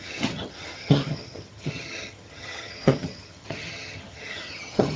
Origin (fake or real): fake